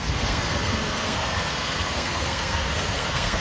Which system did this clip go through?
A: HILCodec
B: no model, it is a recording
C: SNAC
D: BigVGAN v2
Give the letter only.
C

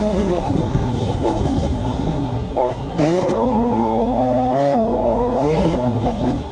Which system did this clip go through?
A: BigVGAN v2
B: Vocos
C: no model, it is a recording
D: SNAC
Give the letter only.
D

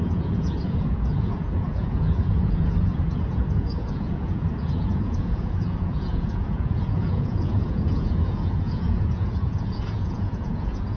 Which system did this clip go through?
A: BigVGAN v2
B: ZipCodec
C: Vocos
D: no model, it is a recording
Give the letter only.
C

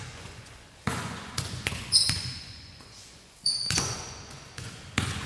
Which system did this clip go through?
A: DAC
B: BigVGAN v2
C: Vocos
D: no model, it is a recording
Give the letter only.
C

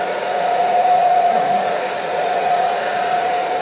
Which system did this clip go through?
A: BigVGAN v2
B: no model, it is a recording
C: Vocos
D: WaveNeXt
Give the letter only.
C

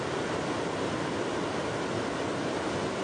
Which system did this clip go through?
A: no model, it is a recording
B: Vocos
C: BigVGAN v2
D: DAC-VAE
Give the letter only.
A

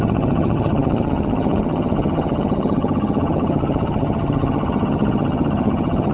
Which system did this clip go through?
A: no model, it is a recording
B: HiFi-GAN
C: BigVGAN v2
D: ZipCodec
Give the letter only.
B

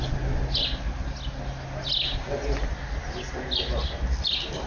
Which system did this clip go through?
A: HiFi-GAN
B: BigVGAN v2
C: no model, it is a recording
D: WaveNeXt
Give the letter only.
C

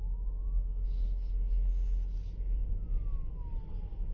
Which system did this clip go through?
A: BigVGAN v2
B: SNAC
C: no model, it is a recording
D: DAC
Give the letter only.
C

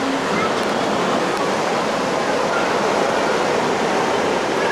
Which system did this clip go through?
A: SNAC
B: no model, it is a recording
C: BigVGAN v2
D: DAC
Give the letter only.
B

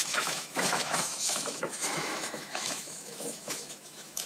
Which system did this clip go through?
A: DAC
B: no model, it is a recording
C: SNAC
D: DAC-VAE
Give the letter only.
D